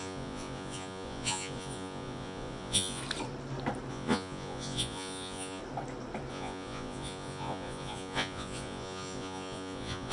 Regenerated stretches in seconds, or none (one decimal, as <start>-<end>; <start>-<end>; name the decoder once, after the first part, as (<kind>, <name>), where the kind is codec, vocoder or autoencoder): 0.0-3.0 (vocoder, Vocos); 3.9-5.6; 6.3-10.1